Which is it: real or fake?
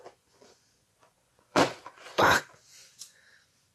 fake